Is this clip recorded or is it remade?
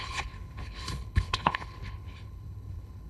remade